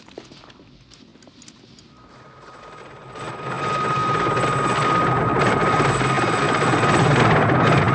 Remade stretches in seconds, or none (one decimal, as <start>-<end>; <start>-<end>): none